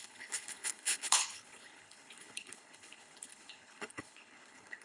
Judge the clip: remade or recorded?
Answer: remade